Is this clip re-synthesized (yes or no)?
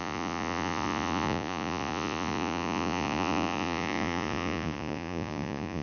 yes